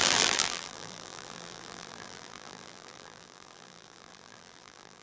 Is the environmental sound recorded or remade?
remade